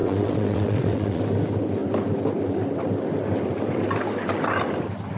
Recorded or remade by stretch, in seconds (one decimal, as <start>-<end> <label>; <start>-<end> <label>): 0.0-1.2 remade; 1.2-5.2 recorded